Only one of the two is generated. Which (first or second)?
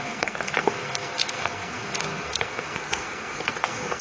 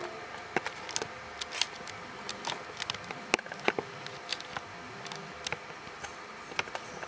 first